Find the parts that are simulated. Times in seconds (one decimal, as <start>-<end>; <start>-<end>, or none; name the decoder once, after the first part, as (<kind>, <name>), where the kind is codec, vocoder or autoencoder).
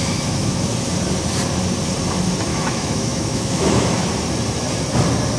0.0-0.7 (autoencoder, DAC-VAE); 2.5-4.1